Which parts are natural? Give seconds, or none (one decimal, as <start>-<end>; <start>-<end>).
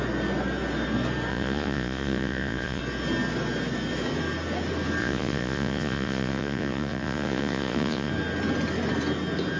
0.0-1.3; 2.8-5.0; 8.1-9.6